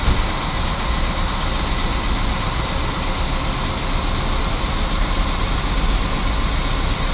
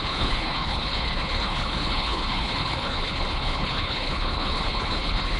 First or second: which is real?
first